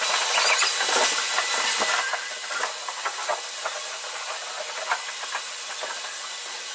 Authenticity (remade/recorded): recorded